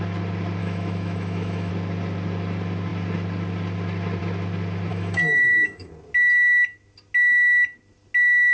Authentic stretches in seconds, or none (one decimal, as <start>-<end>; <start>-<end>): 0.0-0.6; 1.7-4.9; 5.9-8.5